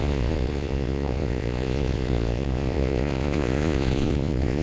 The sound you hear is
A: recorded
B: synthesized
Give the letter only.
B